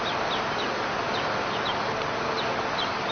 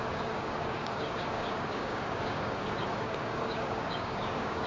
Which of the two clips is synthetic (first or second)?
second